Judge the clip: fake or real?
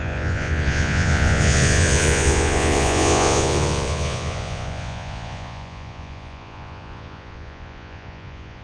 fake